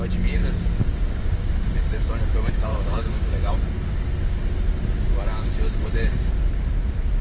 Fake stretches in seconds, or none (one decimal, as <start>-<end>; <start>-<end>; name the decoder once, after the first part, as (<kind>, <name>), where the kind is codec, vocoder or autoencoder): 0.4-1.5 (codec, DAC); 2.7-3.5